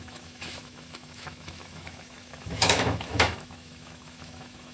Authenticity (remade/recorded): remade